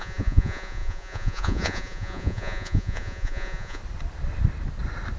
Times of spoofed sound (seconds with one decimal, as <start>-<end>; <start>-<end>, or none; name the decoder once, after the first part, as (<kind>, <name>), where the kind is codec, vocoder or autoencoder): 0.0-3.8 (vocoder, Vocos)